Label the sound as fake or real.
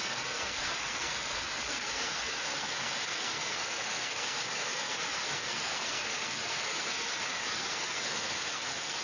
fake